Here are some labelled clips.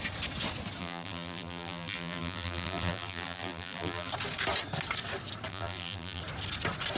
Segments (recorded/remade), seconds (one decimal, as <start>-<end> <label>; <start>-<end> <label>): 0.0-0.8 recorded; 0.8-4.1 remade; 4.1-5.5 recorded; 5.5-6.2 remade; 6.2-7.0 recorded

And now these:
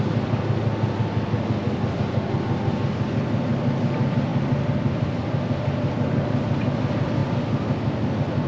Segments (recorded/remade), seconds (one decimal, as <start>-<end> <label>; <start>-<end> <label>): 0.0-8.5 recorded

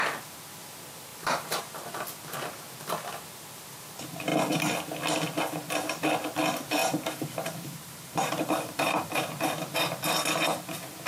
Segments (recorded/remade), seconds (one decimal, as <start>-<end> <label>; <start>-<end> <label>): 0.0-1.1 recorded; 1.1-1.6 remade; 1.6-6.8 recorded; 6.8-9.3 remade; 9.3-11.1 recorded

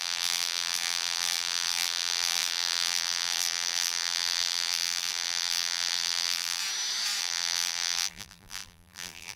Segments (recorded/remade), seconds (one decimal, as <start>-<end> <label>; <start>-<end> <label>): 0.0-6.6 remade; 6.6-7.2 recorded; 7.2-9.4 remade

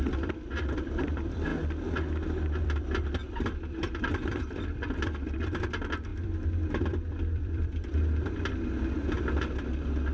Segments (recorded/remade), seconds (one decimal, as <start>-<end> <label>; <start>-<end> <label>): 0.0-1.5 remade; 1.5-2.6 recorded; 2.6-10.1 remade

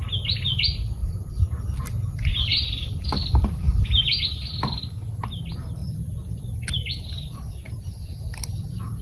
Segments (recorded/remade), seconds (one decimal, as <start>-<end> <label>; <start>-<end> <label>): 0.0-1.0 recorded; 1.0-1.8 remade; 1.8-2.3 recorded; 2.3-5.3 remade; 5.3-5.8 recorded; 5.8-9.0 remade

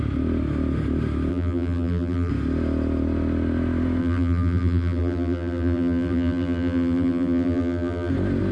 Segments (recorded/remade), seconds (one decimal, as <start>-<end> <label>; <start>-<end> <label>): 0.0-1.3 recorded; 1.3-2.3 remade; 2.3-4.0 recorded; 4.0-8.1 remade; 8.1-8.5 recorded